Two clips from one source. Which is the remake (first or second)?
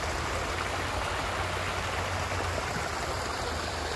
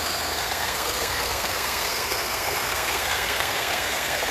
second